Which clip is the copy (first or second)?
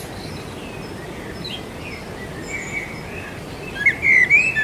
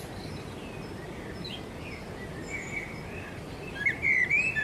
second